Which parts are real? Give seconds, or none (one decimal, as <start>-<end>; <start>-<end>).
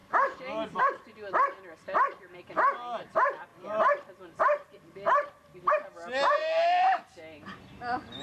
0.8-3.5; 5.7-6.4; 7.1-8.2